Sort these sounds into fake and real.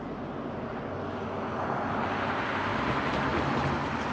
real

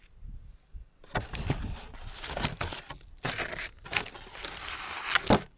real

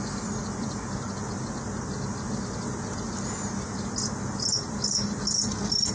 real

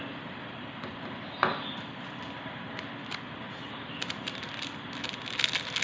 real